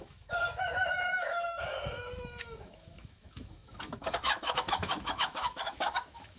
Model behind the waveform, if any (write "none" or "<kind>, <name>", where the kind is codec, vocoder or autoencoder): autoencoder, DAC-VAE